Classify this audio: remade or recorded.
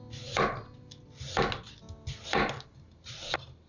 recorded